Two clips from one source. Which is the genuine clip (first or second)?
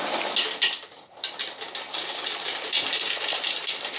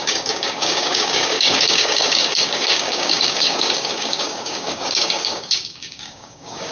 first